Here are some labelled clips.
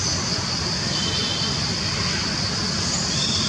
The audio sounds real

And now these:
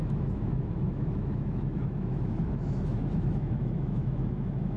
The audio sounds fake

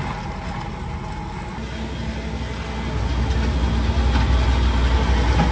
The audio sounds real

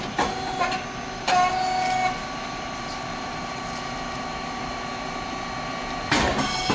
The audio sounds real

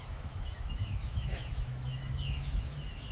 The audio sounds fake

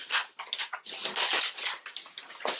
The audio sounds real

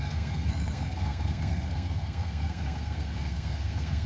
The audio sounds fake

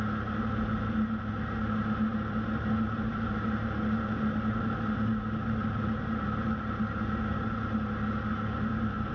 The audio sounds real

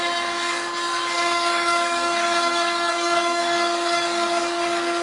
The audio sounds fake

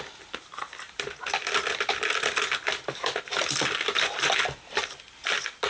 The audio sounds real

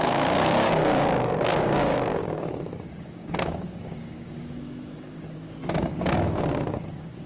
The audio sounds fake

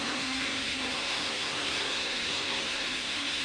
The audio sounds fake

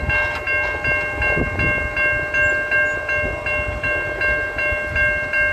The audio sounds real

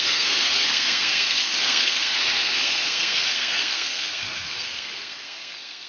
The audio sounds fake